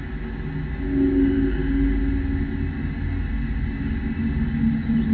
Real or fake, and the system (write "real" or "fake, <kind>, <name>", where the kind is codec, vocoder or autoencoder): real